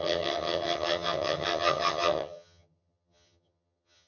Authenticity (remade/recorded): remade